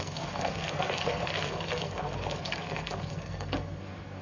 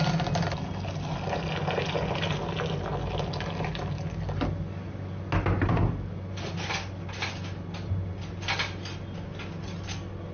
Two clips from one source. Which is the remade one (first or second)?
first